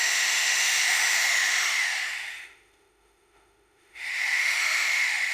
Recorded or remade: remade